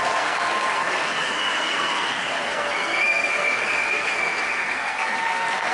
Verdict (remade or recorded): remade